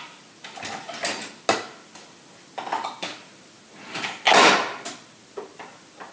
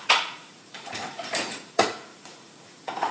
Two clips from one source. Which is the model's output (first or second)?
second